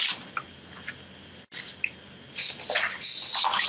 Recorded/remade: recorded